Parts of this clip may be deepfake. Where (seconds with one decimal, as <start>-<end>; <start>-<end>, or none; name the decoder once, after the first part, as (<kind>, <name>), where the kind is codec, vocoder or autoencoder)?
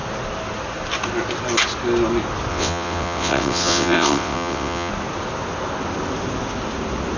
2.5-4.9 (vocoder, WaveNeXt)